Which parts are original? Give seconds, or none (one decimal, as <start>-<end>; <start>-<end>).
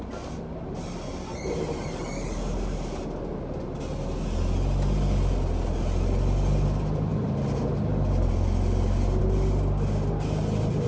0.0-10.9